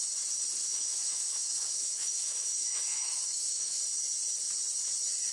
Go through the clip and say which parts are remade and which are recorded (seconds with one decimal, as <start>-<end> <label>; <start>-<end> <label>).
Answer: 0.0-0.6 recorded; 0.6-3.8 remade; 3.8-5.3 recorded